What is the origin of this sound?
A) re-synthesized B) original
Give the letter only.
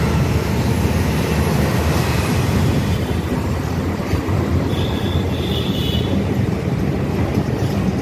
A